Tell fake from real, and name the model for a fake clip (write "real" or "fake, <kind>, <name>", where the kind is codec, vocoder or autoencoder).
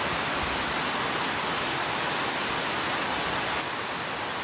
real